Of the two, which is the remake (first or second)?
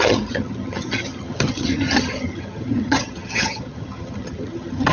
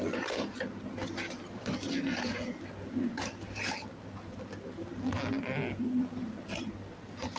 first